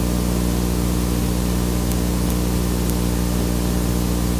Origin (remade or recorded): recorded